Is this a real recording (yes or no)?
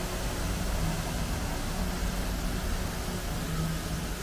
yes